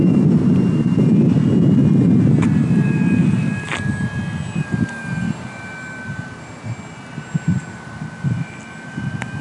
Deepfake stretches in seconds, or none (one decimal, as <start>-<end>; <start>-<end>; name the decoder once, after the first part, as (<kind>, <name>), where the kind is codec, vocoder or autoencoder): none